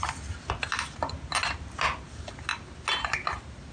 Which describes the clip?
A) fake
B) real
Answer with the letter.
B